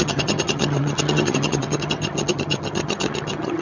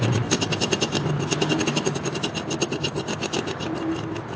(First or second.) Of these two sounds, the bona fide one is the second